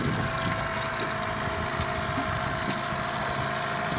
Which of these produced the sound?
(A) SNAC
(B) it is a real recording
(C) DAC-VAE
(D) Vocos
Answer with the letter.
B